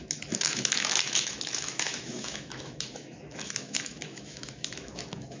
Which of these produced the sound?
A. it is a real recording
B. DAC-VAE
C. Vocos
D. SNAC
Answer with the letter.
B